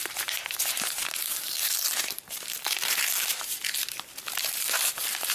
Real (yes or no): no